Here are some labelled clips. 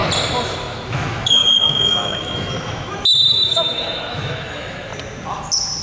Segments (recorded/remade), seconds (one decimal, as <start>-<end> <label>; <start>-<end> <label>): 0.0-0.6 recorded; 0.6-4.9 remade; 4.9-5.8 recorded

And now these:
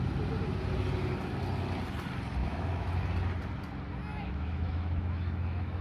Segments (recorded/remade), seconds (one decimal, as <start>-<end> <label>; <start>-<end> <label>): 0.0-2.4 recorded; 2.4-2.9 remade; 2.9-4.1 recorded; 4.1-5.8 remade

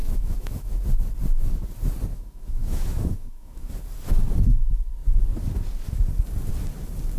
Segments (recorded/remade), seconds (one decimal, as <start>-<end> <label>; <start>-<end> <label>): 0.0-0.8 remade; 0.8-2.1 recorded; 2.1-3.7 remade; 3.7-7.2 recorded

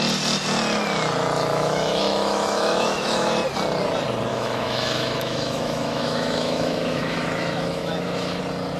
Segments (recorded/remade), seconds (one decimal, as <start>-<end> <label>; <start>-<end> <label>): 0.0-1.5 recorded; 1.5-3.3 remade; 3.3-4.3 recorded; 4.3-8.4 remade; 8.4-8.8 recorded